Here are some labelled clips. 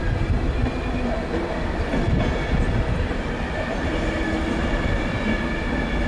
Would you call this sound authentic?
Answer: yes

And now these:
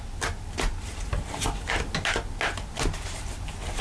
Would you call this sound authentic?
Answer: yes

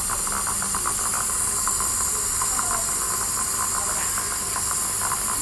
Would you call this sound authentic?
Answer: yes